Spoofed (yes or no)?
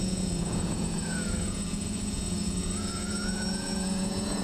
yes